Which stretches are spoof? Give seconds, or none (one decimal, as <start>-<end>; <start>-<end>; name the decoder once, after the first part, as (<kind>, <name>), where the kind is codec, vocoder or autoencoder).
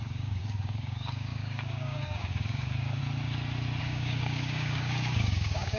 0.0-3.0 (codec, DAC); 3.8-5.8